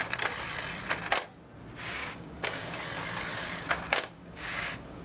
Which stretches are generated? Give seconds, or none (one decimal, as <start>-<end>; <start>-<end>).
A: 2.0-2.8; 3.3-5.0